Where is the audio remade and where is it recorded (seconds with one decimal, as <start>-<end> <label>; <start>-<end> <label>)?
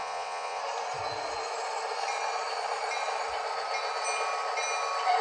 0.0-0.6 remade; 0.6-5.2 recorded